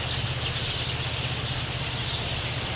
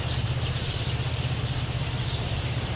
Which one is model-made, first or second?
second